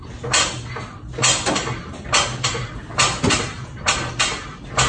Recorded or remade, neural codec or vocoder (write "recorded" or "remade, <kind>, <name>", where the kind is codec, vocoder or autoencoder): recorded